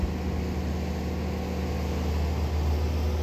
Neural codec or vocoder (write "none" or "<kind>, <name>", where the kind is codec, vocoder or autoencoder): none